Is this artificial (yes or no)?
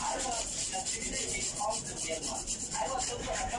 no